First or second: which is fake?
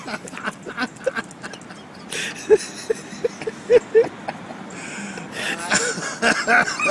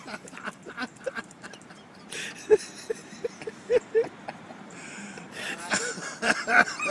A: second